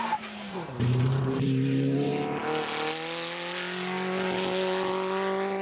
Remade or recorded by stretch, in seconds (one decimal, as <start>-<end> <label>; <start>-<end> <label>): 0.0-2.1 remade; 2.1-5.6 recorded